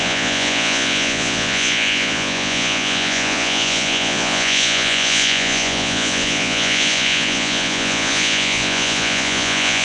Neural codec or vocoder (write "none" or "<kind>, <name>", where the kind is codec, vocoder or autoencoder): vocoder, Vocos